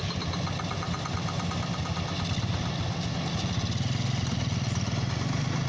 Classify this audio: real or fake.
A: real